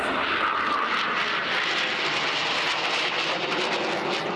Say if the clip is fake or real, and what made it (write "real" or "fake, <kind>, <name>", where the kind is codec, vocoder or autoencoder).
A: real